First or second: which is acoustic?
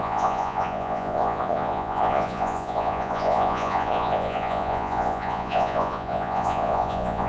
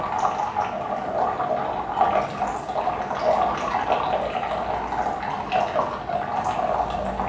second